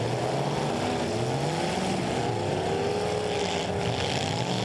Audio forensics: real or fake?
real